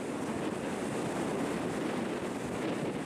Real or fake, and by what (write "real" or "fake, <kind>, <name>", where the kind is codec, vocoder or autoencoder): real